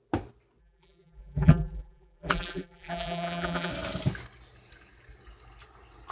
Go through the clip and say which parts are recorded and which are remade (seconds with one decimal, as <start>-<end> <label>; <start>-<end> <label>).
0.0-0.6 recorded; 0.6-3.7 remade; 3.7-6.1 recorded